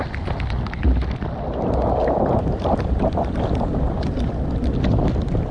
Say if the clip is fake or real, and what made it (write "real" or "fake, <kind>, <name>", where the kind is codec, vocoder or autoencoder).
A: real